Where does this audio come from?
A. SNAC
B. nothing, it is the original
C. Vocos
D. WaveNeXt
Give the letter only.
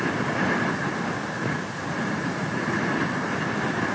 B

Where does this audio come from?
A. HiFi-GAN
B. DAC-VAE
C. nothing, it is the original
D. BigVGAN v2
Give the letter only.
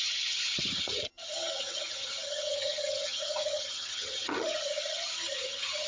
A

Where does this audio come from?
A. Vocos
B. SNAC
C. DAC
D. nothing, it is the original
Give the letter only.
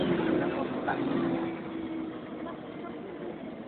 D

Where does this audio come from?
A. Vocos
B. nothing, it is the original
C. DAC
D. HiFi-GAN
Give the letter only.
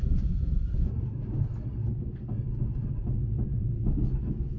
B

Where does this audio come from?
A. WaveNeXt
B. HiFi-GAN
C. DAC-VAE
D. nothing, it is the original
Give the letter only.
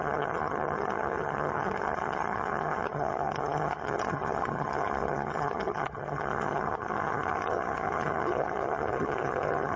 B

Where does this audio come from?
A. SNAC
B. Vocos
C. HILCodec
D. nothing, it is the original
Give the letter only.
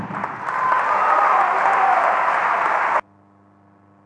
D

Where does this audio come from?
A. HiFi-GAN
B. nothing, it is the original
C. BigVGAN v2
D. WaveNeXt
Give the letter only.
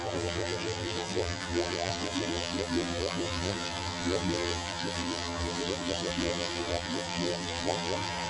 C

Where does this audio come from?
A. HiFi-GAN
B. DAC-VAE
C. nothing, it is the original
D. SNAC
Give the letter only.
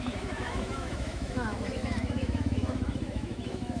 B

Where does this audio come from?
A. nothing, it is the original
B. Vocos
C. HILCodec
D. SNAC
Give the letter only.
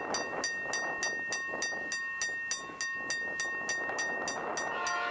A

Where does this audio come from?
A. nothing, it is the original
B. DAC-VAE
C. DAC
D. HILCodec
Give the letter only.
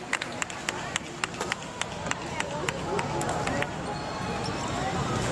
A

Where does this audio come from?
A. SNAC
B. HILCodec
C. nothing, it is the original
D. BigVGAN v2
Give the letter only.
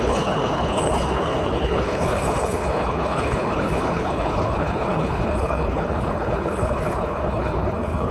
B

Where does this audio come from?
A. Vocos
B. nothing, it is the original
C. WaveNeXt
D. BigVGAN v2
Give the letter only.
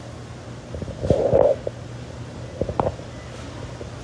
B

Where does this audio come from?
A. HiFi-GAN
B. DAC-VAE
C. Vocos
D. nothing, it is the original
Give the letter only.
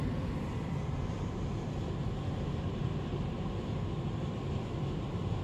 D